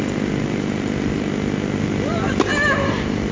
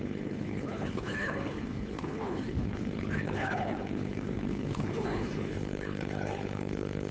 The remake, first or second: second